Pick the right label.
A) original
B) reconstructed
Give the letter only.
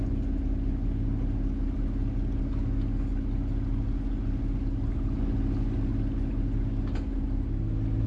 A